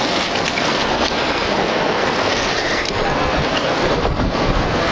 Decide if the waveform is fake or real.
fake